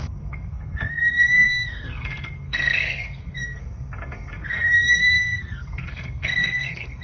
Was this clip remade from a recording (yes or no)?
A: yes